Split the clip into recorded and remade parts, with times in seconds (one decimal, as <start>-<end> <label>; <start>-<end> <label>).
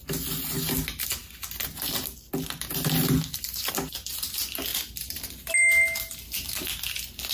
0.0-4.7 recorded; 4.7-5.5 remade; 5.5-7.3 recorded